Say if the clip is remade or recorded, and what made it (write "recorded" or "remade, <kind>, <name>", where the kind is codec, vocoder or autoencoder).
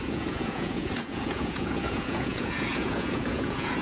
remade, vocoder, Vocos